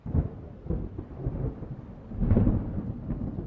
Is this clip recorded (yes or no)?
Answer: yes